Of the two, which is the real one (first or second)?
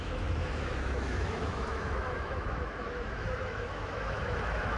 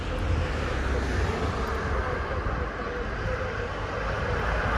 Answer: second